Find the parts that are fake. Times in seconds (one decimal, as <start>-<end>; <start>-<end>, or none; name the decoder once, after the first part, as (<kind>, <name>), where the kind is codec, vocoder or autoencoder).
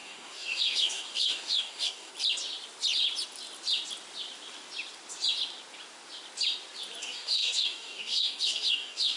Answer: 0.0-2.1 (codec, DAC); 7.0-9.2